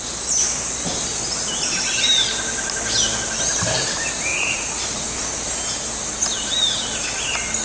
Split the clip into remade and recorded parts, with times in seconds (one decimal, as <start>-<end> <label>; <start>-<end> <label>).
0.0-4.3 recorded; 4.3-5.1 remade; 5.1-7.6 recorded

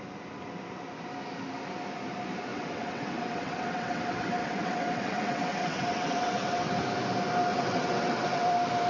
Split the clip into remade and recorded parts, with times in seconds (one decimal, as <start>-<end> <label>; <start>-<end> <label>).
0.0-2.5 recorded; 2.5-6.7 remade; 6.7-7.5 recorded; 7.5-8.5 remade; 8.5-8.9 recorded

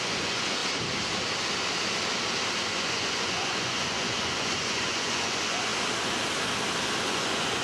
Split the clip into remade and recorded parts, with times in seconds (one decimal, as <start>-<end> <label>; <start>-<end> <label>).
0.0-0.6 remade; 0.6-2.7 recorded; 2.7-5.7 remade; 5.7-7.0 recorded; 7.0-7.6 remade

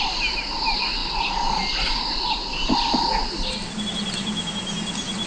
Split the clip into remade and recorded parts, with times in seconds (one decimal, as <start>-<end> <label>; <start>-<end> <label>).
0.0-5.3 recorded

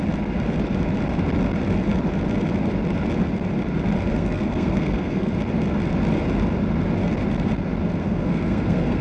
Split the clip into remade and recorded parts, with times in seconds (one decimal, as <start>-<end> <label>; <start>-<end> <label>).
0.0-4.1 recorded; 4.1-5.3 remade; 5.3-8.0 recorded; 8.0-9.0 remade

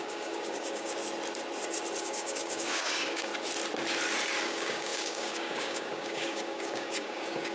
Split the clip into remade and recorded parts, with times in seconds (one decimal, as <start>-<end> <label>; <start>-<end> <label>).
0.0-1.0 remade; 1.0-2.0 recorded; 2.0-3.3 remade; 3.3-4.4 recorded; 4.4-7.5 remade

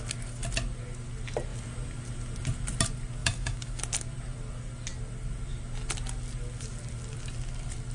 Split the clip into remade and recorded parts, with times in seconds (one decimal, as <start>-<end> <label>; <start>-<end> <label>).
0.0-3.2 recorded; 3.2-3.8 remade; 3.8-7.9 recorded